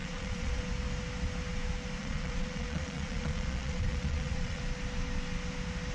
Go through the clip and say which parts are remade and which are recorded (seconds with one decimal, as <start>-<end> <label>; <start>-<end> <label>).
0.0-0.7 remade; 0.7-2.0 recorded; 2.0-4.6 remade; 4.6-5.9 recorded